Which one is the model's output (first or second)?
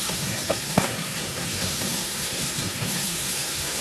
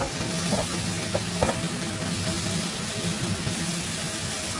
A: first